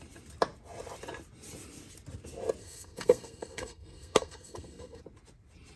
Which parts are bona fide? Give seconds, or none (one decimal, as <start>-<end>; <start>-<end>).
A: 0.0-2.6; 5.0-5.8